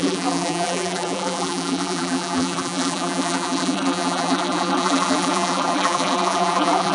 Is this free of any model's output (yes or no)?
no